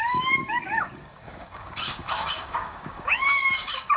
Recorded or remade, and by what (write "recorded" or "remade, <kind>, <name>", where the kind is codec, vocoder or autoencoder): remade, codec, DAC